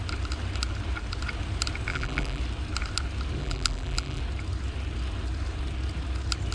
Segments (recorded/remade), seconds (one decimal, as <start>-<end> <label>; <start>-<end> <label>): 0.0-1.9 recorded; 1.9-2.4 remade; 2.4-3.4 recorded; 3.4-4.2 remade; 4.2-6.5 recorded